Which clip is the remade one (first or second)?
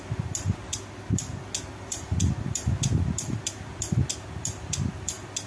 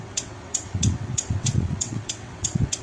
second